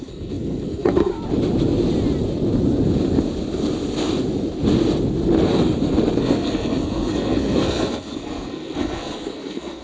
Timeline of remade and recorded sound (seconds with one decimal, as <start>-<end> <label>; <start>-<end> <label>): 0.0-1.1 remade; 1.1-6.2 recorded; 6.2-9.8 remade